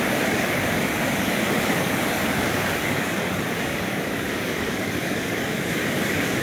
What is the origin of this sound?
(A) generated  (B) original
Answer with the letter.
A